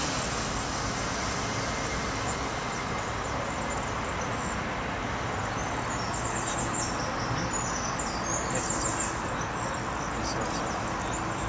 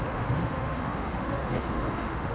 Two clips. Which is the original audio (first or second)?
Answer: first